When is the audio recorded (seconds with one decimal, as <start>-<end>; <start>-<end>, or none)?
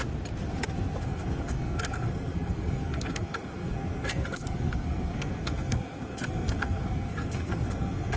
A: 0.0-1.0